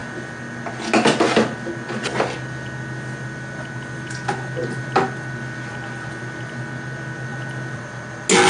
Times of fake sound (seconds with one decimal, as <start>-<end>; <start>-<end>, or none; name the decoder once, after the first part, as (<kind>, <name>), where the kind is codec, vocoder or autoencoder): none